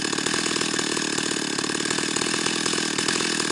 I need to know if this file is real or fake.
real